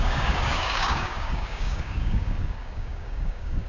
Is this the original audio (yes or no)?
no